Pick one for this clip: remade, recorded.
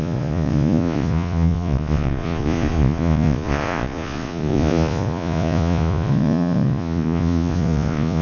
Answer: remade